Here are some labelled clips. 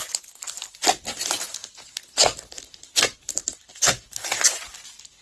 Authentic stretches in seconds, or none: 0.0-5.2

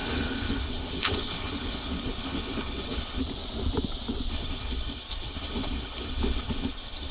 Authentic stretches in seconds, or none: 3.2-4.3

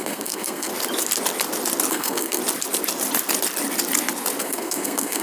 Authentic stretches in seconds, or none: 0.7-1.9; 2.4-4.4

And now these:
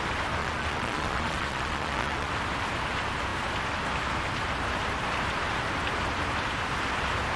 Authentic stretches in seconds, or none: 0.0-0.4; 2.3-7.4

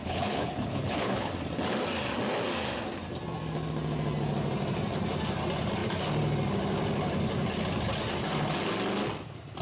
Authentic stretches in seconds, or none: 1.3-9.6

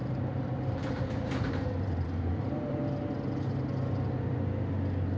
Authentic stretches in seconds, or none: 2.8-5.2

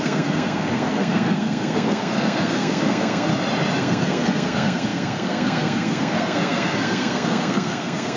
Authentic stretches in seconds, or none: 3.3-3.8